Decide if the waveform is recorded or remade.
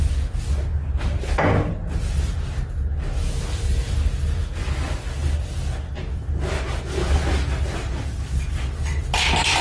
recorded